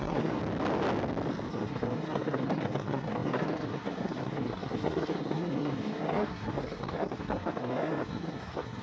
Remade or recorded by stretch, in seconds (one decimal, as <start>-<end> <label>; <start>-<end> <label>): 0.0-0.4 remade; 0.4-1.5 recorded; 1.5-8.8 remade